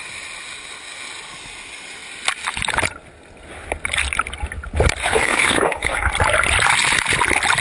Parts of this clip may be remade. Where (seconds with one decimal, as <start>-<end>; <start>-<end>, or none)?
5.0-6.1